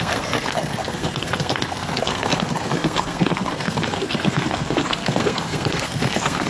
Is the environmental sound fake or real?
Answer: fake